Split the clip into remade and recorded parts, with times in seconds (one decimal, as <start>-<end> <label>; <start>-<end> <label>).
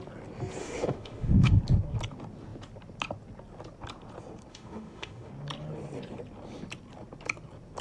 0.0-0.6 recorded; 0.6-1.6 remade; 1.6-4.5 recorded; 4.5-5.3 remade; 5.3-7.8 recorded